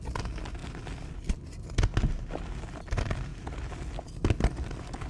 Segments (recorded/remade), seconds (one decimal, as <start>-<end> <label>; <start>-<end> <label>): 0.0-5.1 recorded